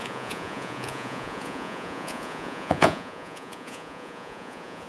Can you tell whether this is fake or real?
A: fake